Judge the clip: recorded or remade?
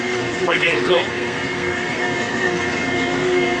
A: remade